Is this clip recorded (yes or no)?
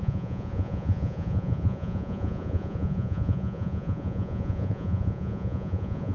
no